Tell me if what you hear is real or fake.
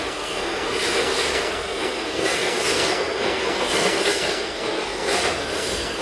fake